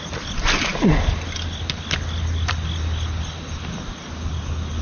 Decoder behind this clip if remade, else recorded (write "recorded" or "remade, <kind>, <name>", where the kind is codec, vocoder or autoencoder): recorded